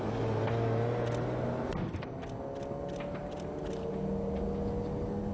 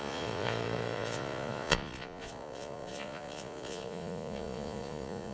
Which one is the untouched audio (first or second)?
first